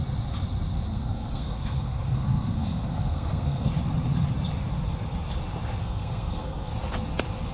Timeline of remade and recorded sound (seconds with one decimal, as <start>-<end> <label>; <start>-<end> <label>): 0.0-0.9 recorded; 0.9-3.7 remade; 3.7-5.8 recorded; 5.8-6.7 remade; 6.7-7.5 recorded